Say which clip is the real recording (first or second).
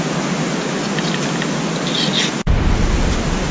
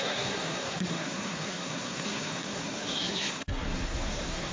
first